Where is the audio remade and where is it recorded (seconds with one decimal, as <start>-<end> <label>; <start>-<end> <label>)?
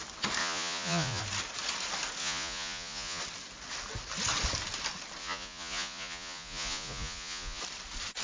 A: 0.0-0.4 recorded; 0.4-1.2 remade; 1.2-2.2 recorded; 2.2-3.2 remade; 3.2-5.2 recorded; 5.2-7.6 remade; 7.6-8.2 recorded